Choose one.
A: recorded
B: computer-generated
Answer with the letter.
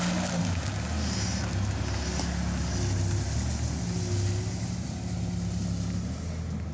A